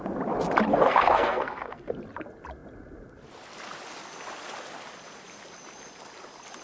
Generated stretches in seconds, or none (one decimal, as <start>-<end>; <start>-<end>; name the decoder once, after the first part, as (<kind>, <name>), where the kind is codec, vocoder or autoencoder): 0.7-1.9 (codec, SNAC)